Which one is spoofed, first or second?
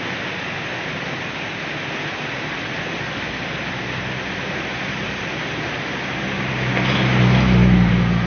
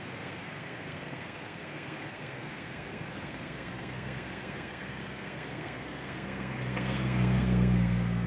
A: second